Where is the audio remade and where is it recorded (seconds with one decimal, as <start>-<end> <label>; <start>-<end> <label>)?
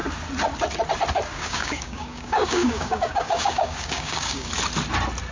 0.0-1.3 recorded; 1.3-4.5 remade; 4.5-5.3 recorded